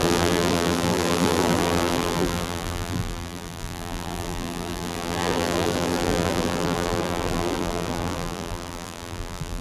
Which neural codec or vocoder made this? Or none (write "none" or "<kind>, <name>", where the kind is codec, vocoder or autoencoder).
vocoder, BigVGAN v2